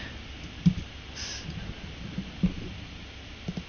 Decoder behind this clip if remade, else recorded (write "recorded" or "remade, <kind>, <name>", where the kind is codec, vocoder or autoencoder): recorded